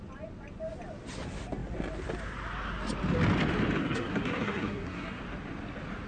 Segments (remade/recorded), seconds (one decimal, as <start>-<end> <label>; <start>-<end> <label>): 0.0-3.8 recorded; 3.8-5.2 remade; 5.2-6.1 recorded